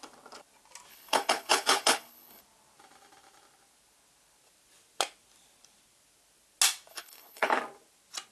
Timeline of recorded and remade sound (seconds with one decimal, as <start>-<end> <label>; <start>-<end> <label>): 0.0-0.9 recorded; 0.9-2.4 remade; 2.4-6.9 recorded; 6.9-7.6 remade; 7.6-8.3 recorded